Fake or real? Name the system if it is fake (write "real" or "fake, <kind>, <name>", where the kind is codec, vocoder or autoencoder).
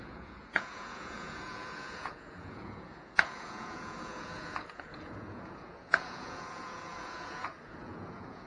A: fake, vocoder, Vocos